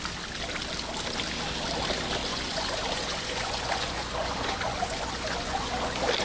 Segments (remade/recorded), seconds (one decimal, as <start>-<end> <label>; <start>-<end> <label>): 0.0-2.3 recorded; 2.3-5.7 remade; 5.7-6.2 recorded